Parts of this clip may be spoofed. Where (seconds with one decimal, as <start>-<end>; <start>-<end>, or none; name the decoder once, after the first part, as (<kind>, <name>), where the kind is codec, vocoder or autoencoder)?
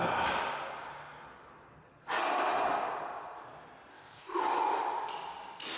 3.9-4.4 (codec, ZipCodec)